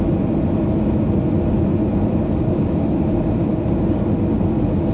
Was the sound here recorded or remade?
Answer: recorded